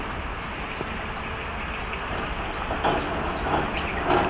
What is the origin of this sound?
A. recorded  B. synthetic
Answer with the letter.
A